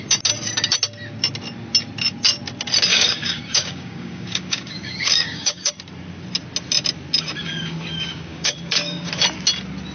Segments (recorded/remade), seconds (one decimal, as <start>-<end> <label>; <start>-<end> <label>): 0.0-2.9 recorded; 2.9-5.7 remade; 5.7-7.4 recorded; 7.4-9.1 remade; 9.1-9.9 recorded